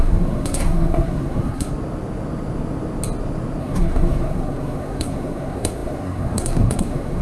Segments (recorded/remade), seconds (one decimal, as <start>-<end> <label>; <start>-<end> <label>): 0.0-1.7 remade; 1.7-3.6 recorded; 3.6-7.2 remade